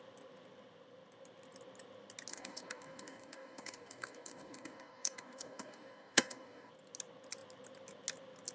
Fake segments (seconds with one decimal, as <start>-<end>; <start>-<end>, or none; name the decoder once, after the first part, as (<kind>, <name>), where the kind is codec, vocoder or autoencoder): 2.3-6.7 (codec, DAC)